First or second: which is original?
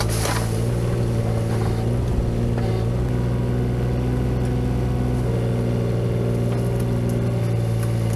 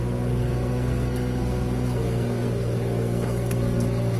first